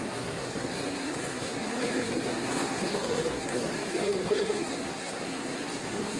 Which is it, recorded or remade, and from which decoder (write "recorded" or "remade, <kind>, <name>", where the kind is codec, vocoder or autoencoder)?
remade, codec, SNAC